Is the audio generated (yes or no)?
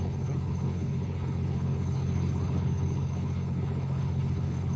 yes